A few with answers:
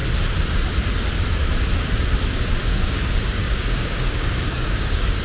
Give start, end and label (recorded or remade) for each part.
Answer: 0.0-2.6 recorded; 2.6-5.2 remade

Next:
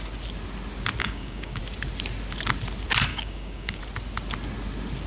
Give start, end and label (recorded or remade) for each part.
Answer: 0.0-1.0 recorded; 1.0-1.6 remade; 1.6-3.1 recorded; 3.1-3.8 remade; 3.8-5.1 recorded

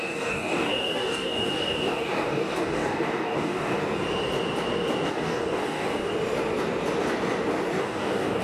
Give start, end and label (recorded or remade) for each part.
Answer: 0.0-3.8 remade; 3.8-5.1 recorded; 5.1-6.1 remade; 6.1-7.8 recorded; 7.8-8.4 remade

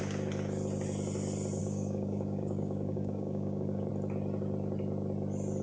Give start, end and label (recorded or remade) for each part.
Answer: 0.0-1.6 recorded; 1.6-3.9 remade; 3.9-5.6 recorded

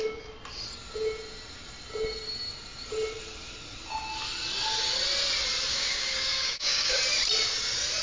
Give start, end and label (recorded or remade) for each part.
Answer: 0.0-5.7 recorded; 5.7-7.0 remade; 7.0-8.0 recorded

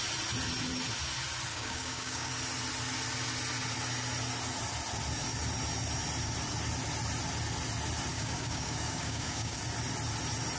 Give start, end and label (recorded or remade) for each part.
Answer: 0.0-1.5 recorded; 1.5-2.3 remade; 2.3-8.1 recorded; 8.1-9.6 remade; 9.6-10.6 recorded